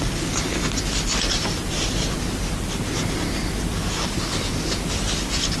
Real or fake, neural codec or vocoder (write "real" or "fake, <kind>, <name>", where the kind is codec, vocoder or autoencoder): real